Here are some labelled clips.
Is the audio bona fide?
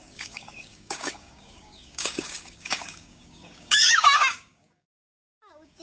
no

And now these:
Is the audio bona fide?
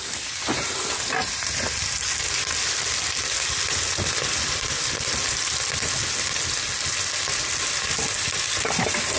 yes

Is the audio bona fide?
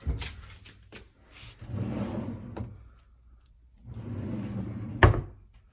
yes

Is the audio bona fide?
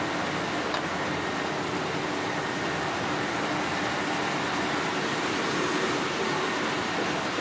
yes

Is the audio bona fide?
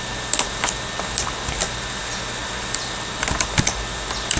yes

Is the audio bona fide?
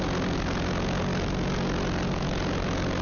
yes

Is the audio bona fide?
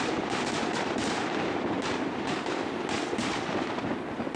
yes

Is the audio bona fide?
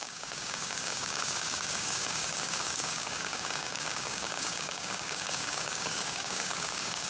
no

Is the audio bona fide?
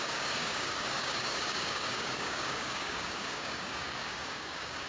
no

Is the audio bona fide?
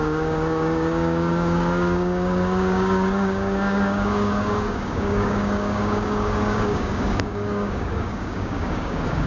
no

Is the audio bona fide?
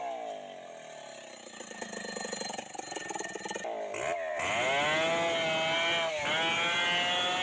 yes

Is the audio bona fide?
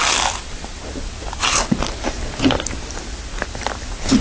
yes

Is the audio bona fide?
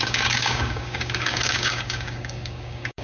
no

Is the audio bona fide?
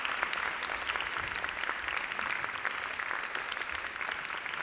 yes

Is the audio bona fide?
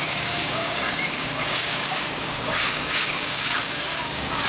no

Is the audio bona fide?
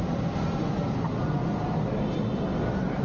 yes